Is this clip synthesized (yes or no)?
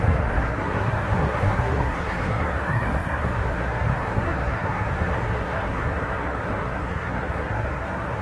yes